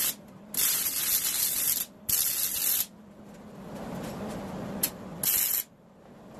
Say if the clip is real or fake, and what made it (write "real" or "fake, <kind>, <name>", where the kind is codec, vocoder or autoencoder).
real